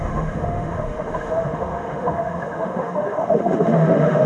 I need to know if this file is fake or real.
fake